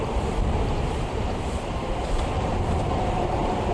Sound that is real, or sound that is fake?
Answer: fake